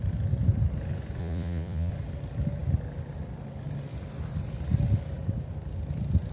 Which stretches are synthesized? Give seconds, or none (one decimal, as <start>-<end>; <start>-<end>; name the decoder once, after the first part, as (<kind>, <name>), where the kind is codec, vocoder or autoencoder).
1.2-1.9 (vocoder, Vocos)

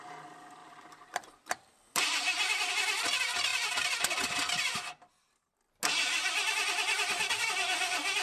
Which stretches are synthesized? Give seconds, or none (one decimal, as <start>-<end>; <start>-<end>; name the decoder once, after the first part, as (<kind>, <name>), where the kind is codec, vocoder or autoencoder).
0.6-2.7 (vocoder, BigVGAN v2)